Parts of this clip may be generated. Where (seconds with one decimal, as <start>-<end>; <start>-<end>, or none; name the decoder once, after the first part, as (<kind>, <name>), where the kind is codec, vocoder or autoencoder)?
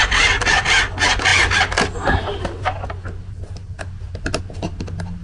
none